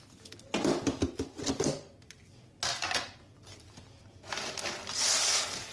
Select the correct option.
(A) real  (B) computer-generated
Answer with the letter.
A